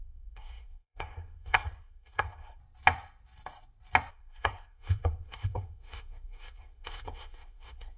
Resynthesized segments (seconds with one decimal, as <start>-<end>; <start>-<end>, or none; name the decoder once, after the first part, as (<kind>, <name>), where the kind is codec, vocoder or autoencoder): 0.0-2.6 (codec, SNAC); 4.1-8.0